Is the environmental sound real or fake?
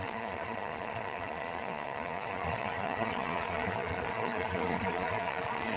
fake